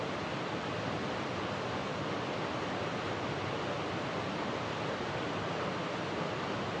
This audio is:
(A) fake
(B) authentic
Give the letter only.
B